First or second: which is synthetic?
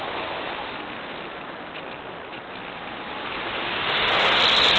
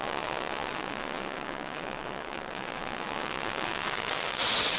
second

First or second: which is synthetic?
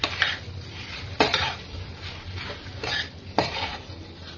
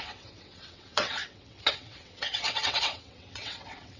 second